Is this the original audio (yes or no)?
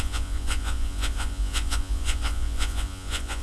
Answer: no